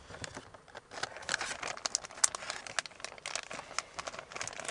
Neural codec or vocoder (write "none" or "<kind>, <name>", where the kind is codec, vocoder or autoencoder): none